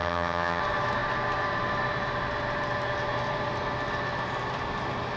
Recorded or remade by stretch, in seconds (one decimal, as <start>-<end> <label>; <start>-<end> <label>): 0.0-0.6 remade; 0.6-5.2 recorded